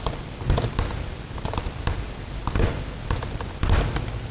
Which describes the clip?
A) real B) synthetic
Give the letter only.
A